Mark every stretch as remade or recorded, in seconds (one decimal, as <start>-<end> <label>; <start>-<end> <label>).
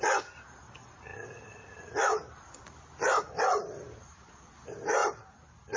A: 0.0-1.1 recorded; 1.1-4.6 remade; 4.6-5.8 recorded